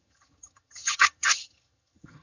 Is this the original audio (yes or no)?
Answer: no